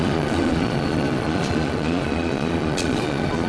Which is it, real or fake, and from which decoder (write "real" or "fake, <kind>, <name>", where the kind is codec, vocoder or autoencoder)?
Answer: fake, vocoder, Vocos